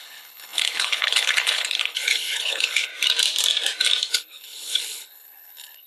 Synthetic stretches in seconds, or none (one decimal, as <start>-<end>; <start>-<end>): 0.0-2.9; 4.1-5.9